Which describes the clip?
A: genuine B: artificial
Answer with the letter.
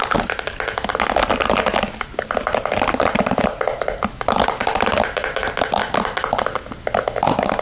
A